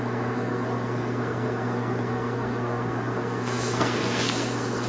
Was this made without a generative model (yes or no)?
no